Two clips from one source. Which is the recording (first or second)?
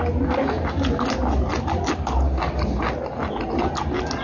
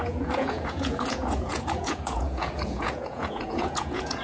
first